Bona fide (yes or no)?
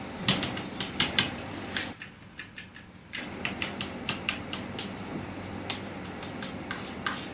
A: yes